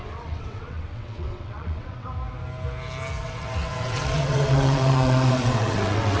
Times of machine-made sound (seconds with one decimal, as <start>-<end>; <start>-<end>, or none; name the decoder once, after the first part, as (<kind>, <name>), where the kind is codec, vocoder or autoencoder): 0.0-2.1 (vocoder, WaveNeXt); 3.2-6.2